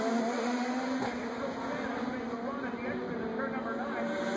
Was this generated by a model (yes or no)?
no